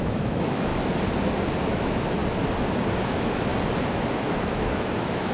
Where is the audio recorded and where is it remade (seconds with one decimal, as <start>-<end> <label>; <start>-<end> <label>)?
0.0-0.7 remade; 0.7-1.7 recorded; 1.7-2.2 remade; 2.2-3.0 recorded; 3.0-3.5 remade; 3.5-4.2 recorded; 4.2-5.3 remade